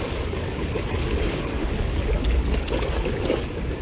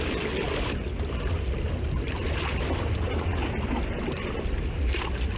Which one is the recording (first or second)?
second